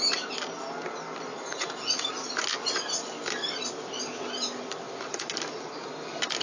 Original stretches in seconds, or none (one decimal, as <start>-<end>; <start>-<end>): 0.0-1.3; 2.1-6.4

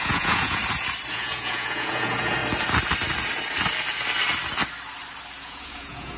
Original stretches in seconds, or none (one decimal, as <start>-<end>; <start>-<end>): 0.6-1.1; 2.4-5.4

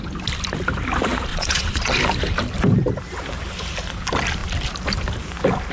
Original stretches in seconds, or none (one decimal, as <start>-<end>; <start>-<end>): 0.0-1.3; 2.0-5.7

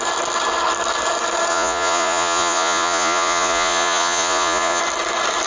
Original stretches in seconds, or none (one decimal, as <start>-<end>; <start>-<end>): 0.0-1.5; 4.8-5.5

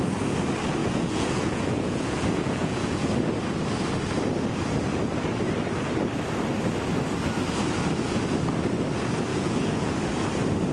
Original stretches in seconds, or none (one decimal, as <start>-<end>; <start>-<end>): 0.0-0.8; 3.1-9.3; 9.9-10.7

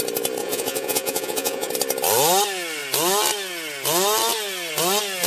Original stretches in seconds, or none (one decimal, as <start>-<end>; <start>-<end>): 0.0-0.4; 1.7-5.3